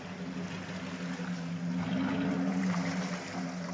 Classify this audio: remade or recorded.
recorded